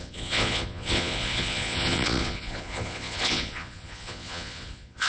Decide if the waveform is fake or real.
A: fake